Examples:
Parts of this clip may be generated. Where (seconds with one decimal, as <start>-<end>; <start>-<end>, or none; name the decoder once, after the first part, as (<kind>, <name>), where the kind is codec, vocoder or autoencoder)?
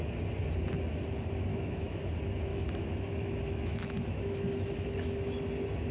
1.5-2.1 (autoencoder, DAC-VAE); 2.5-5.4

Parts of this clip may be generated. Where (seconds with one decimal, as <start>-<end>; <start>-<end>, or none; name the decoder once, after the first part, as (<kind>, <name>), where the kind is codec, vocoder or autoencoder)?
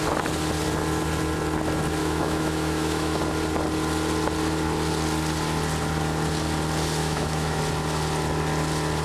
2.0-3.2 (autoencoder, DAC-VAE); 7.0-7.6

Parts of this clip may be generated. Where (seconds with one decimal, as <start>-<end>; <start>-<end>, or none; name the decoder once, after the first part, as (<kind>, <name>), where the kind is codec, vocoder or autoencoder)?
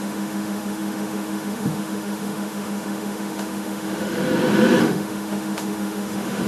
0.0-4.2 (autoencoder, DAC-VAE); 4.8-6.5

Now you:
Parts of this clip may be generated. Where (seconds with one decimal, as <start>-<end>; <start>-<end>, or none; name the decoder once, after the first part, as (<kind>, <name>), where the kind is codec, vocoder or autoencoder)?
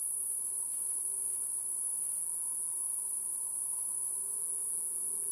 0.0-2.2 (autoencoder, DAC-VAE); 2.8-4.4